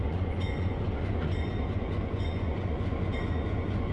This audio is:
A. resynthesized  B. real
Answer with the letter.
A